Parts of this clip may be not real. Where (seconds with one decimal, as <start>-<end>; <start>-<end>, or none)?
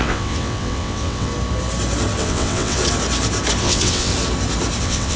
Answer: 0.0-1.3; 2.2-2.8; 3.6-4.1; 4.8-5.2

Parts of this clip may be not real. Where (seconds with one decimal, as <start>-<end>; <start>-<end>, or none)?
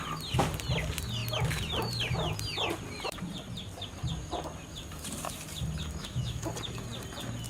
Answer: 6.0-6.5